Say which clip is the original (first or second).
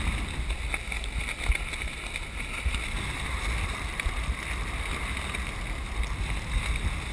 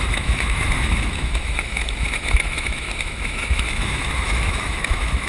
first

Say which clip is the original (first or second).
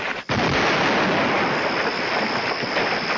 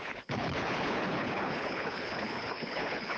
first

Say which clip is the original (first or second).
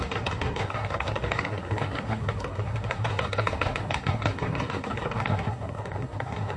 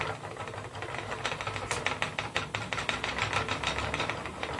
second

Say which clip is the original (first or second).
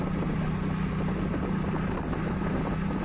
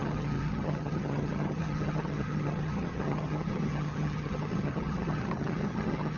first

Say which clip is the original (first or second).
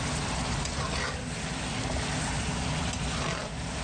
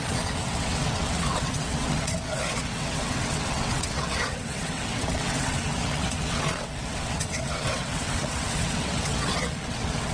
first